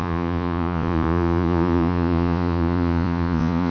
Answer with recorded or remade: remade